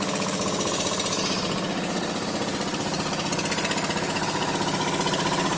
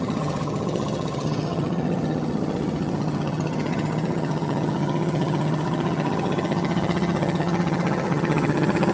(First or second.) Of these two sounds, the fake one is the second